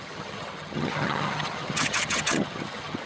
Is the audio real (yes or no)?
no